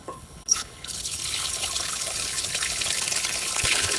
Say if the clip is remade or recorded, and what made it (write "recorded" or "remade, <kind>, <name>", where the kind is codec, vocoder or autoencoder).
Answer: remade, codec, HILCodec